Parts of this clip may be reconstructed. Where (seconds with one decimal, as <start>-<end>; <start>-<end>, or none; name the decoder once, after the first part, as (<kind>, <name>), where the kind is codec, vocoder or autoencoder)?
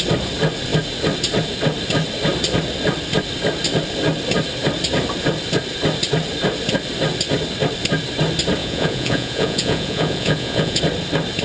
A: 8.6-10.8 (vocoder, Vocos)